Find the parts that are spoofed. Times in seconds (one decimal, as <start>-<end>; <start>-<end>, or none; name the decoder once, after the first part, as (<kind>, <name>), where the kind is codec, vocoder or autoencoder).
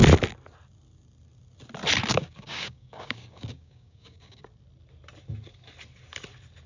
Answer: 2.1-4.4 (codec, DAC)